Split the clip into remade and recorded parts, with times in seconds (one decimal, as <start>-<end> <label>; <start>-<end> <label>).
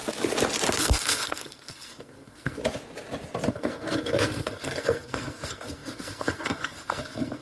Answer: 0.0-0.8 recorded; 0.8-2.6 remade; 2.6-3.5 recorded; 3.5-7.4 remade